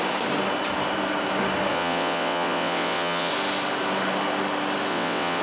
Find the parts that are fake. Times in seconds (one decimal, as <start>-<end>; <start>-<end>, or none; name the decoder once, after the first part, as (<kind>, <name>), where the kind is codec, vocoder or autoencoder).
1.7-3.3 (vocoder, WaveNeXt); 4.9-5.4